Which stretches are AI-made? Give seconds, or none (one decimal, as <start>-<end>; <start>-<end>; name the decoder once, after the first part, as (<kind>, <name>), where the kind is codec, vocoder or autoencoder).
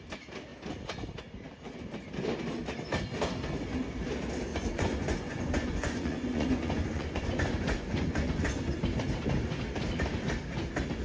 4.5-8.8 (vocoder, Vocos)